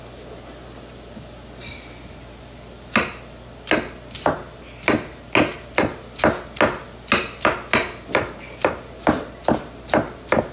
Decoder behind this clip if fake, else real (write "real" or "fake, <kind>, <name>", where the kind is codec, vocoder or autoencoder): real